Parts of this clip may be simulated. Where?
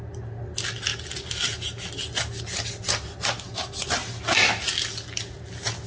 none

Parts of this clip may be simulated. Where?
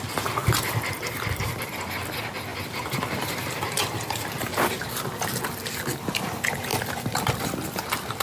0.4-1.4 (vocoder, BigVGAN v2); 2.5-4.8; 6.7-7.5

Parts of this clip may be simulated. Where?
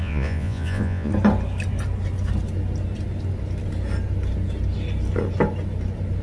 0.0-1.1 (vocoder, Vocos)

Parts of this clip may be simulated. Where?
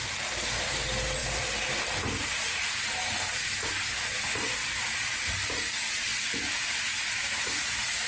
none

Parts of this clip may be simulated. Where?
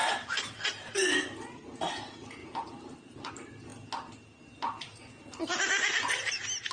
0.0-0.9 (vocoder, BigVGAN v2); 2.4-3.3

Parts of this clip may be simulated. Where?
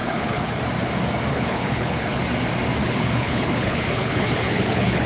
0.0-0.6 (codec, HILCodec); 1.3-2.2; 2.8-5.1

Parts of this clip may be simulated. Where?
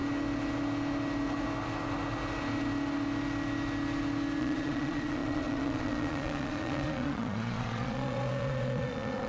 4.4-9.3 (vocoder, Vocos)